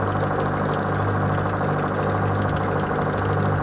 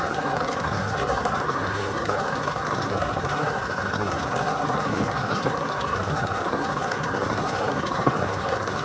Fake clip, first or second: second